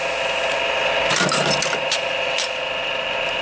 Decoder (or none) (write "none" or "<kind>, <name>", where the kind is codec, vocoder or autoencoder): none